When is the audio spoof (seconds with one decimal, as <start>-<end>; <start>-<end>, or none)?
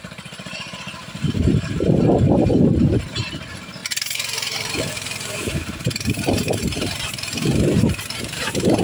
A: 0.0-8.8